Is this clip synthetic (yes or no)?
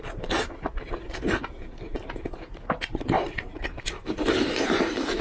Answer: no